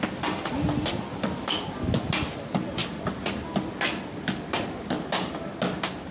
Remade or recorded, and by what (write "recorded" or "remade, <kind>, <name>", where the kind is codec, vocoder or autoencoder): recorded